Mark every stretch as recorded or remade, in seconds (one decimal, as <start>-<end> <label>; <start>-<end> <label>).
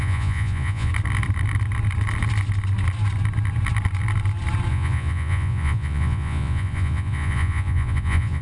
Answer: 0.0-0.9 remade; 0.9-4.7 recorded; 4.7-8.4 remade